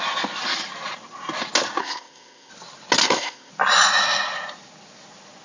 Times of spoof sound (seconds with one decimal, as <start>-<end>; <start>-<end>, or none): 1.8-2.5; 3.0-3.5